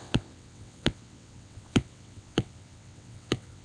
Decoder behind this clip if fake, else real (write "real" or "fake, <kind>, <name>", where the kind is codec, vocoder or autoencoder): fake, vocoder, WaveNeXt